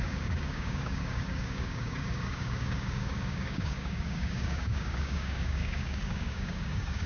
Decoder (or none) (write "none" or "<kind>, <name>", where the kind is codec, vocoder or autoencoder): codec, DAC